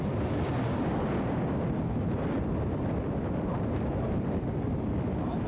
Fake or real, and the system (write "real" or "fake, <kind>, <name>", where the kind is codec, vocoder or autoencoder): real